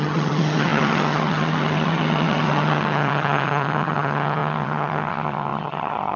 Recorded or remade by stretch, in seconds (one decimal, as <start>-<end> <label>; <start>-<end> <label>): 0.0-6.2 remade